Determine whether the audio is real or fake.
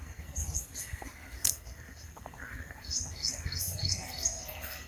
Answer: fake